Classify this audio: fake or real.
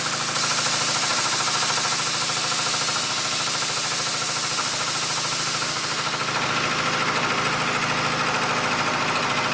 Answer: real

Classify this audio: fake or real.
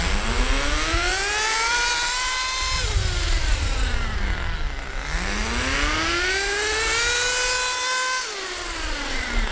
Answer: real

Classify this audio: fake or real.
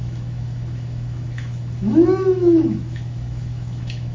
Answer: fake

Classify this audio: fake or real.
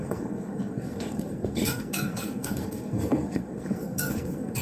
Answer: fake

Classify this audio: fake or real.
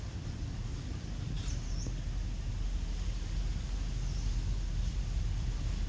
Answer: real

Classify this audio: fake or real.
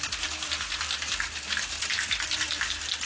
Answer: real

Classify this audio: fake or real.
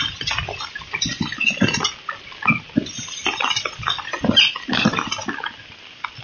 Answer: real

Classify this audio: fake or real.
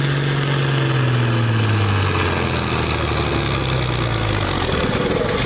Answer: real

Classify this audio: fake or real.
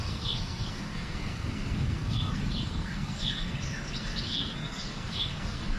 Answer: fake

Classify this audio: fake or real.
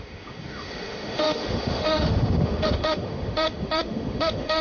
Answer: fake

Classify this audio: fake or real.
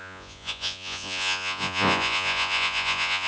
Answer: fake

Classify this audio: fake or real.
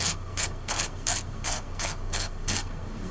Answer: fake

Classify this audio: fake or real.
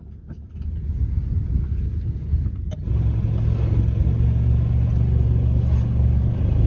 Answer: real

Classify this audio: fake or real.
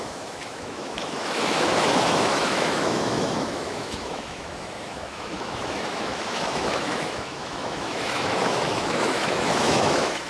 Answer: fake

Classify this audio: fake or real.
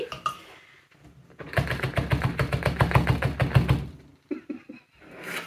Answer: real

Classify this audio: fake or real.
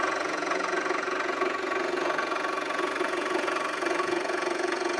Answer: fake